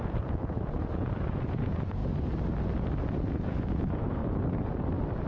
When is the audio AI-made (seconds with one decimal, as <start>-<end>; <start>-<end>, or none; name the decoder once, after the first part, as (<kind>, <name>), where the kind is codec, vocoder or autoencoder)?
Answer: 0.0-2.0 (vocoder, Vocos); 3.1-4.2